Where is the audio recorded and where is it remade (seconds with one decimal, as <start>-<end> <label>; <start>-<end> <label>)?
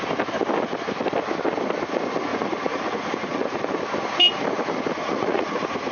0.0-2.3 recorded; 2.3-3.6 remade; 3.6-5.0 recorded; 5.0-5.9 remade